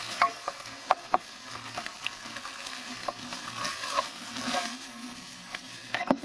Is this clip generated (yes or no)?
yes